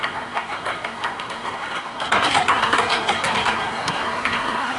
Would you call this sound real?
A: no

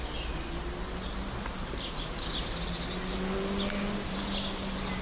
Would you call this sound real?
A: yes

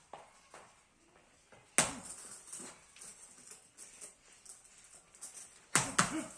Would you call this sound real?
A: yes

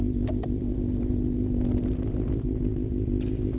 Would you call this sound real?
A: yes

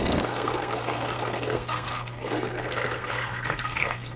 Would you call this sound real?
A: no